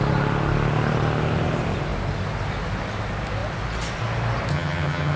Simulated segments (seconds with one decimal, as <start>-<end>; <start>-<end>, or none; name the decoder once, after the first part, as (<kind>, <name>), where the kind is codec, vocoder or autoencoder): 4.5-5.2 (vocoder, HiFi-GAN)